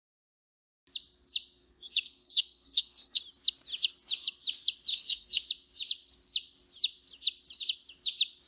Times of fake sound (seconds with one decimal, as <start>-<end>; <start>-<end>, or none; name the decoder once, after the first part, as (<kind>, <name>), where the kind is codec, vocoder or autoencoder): 1.6-3.2 (codec, SNAC); 4.9-5.4